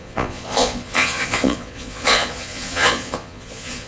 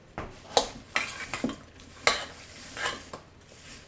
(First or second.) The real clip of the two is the second